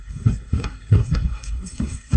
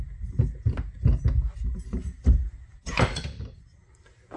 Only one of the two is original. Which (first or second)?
second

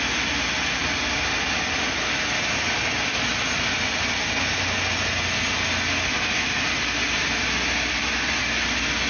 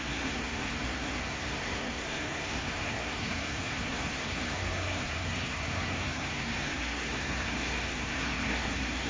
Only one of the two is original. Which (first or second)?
first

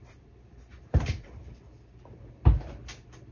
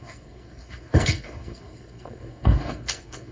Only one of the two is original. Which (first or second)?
first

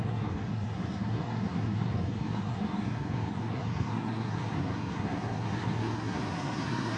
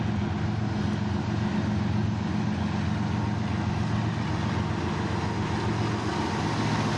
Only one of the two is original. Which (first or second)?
second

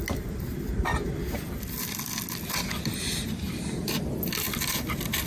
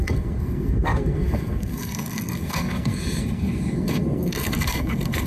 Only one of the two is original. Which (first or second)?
first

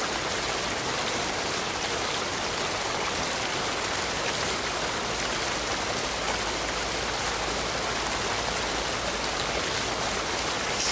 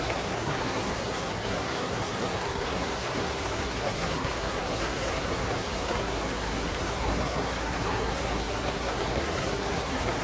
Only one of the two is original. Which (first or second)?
first